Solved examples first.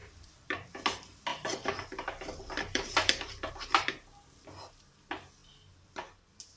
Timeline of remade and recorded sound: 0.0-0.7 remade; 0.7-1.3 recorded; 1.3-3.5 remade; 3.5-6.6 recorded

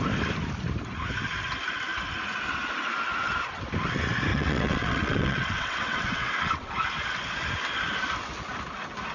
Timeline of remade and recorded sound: 0.0-4.3 recorded; 4.3-6.7 remade; 6.7-9.1 recorded

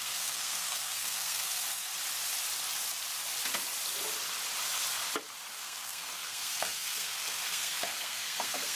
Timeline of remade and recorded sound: 0.0-1.9 remade; 1.9-5.5 recorded; 5.5-8.8 remade

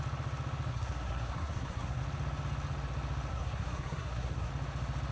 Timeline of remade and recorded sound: 0.0-0.7 recorded; 0.7-2.0 remade; 2.0-3.3 recorded; 3.3-4.5 remade; 4.5-5.1 recorded